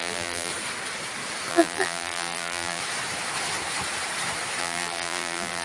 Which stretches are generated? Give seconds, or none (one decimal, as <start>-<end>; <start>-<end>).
0.0-0.5; 1.5-2.8; 4.6-5.6